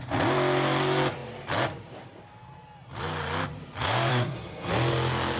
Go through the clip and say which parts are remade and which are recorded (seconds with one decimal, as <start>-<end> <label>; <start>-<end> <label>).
0.0-4.1 recorded; 4.1-4.7 remade; 4.7-5.4 recorded